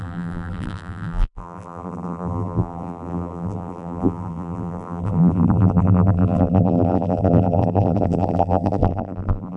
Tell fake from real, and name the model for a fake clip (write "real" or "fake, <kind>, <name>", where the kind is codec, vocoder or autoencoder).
fake, vocoder, BigVGAN v2